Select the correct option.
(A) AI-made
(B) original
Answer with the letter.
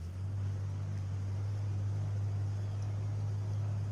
B